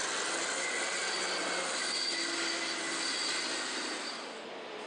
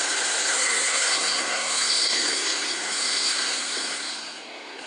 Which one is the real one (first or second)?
first